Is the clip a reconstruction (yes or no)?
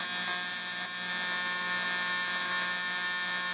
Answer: no